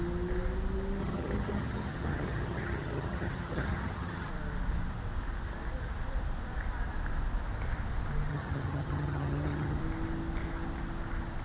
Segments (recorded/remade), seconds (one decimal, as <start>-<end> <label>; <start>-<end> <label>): 0.0-1.0 recorded; 1.0-4.3 remade; 4.3-8.3 recorded; 8.3-9.8 remade; 9.8-11.4 recorded